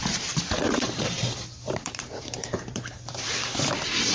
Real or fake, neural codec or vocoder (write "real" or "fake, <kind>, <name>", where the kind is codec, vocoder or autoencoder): fake, vocoder, BigVGAN v2